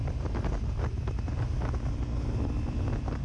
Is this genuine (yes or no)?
yes